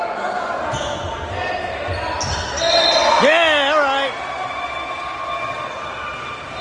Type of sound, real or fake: real